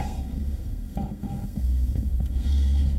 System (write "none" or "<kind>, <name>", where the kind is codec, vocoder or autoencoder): codec, SNAC